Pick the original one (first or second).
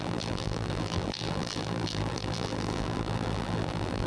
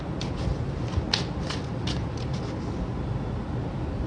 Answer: second